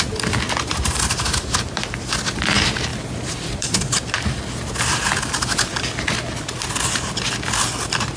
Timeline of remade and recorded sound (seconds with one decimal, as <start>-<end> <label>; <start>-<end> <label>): 0.0-2.9 recorded; 2.9-4.4 remade; 4.4-8.2 recorded